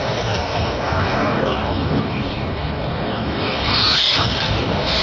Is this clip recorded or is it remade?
remade